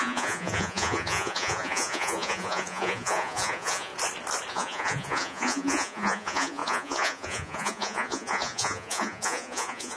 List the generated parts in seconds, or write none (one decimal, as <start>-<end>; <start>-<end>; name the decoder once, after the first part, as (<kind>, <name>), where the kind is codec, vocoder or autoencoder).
0.0-3.9 (vocoder, Vocos); 4.5-10.0